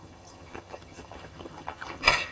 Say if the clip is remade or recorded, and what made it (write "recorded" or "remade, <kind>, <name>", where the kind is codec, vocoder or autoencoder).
remade, vocoder, HiFi-GAN